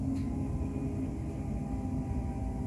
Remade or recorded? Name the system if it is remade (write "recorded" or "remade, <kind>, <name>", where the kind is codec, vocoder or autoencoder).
recorded